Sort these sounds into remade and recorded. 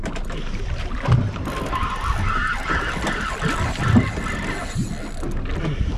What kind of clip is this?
recorded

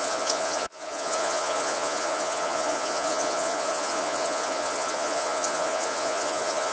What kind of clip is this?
remade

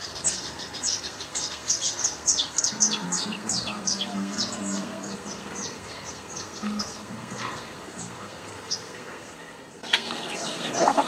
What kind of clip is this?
remade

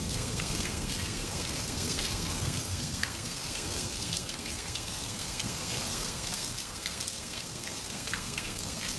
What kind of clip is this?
remade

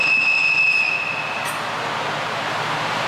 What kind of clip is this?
recorded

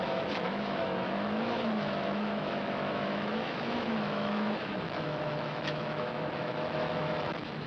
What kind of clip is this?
remade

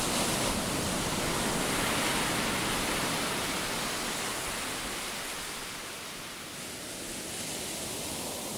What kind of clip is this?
recorded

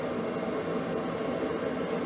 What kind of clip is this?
recorded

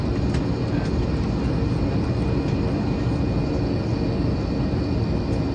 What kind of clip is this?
recorded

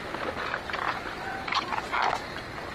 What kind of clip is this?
recorded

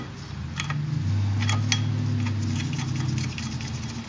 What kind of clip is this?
recorded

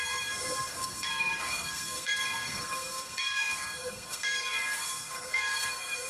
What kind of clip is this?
remade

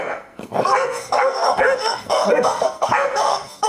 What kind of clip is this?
remade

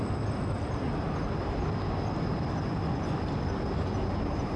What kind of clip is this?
recorded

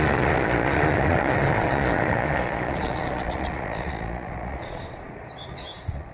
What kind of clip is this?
remade